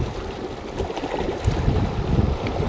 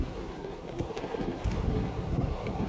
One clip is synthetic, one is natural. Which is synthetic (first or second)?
second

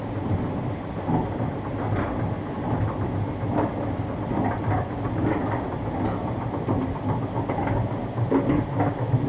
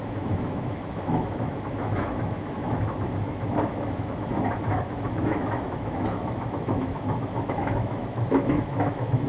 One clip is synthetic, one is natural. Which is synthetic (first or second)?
second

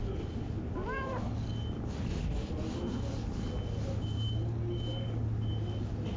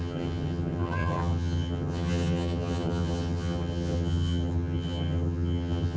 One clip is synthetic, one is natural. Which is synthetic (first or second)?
second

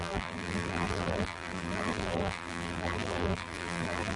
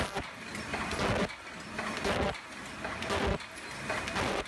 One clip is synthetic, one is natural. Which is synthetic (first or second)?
first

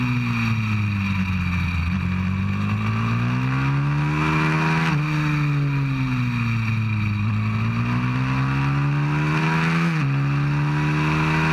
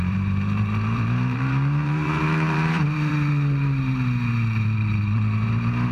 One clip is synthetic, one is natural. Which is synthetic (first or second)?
second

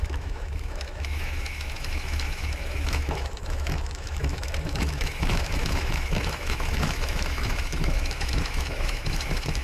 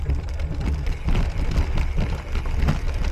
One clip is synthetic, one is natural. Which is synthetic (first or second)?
first